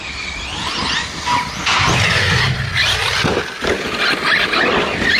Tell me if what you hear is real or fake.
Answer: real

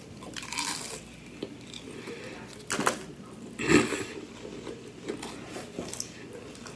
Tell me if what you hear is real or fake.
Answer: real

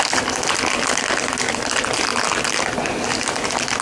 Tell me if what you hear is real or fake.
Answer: real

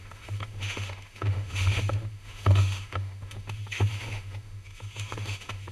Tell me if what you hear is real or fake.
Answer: fake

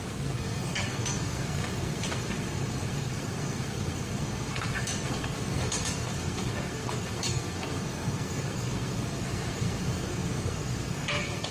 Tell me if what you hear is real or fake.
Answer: fake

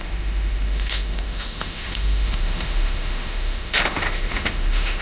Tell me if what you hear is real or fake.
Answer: fake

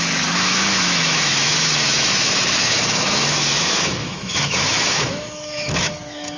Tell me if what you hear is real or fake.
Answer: fake